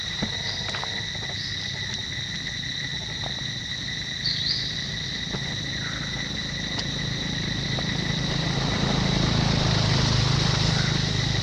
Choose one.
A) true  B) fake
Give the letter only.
A